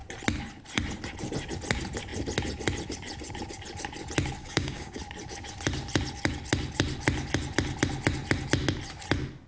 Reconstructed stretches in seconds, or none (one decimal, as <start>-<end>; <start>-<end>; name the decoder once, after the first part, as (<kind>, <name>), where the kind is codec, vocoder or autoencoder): 4.4-5.0 (codec, DAC)